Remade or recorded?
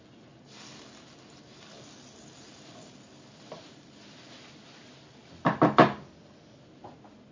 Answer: recorded